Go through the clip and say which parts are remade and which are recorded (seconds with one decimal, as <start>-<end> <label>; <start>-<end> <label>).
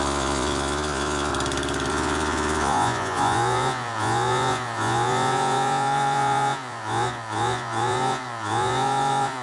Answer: 0.0-1.3 remade; 1.3-1.9 recorded; 1.9-9.4 remade